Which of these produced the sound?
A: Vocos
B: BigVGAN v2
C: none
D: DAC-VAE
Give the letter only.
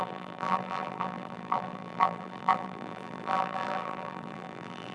B